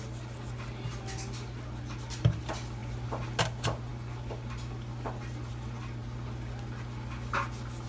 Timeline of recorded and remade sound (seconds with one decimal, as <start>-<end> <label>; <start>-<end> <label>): 0.0-7.9 recorded